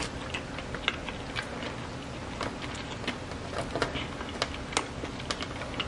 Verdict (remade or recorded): recorded